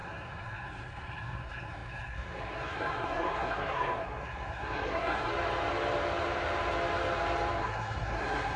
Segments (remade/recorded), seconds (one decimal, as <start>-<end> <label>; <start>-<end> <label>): 0.0-5.3 remade; 5.3-7.6 recorded; 7.6-8.6 remade